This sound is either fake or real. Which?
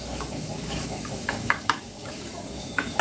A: fake